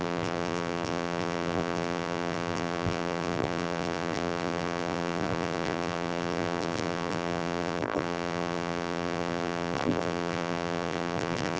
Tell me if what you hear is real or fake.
fake